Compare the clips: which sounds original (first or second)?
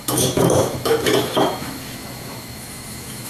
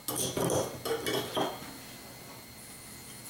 second